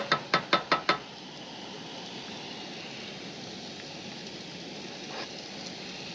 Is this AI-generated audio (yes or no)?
no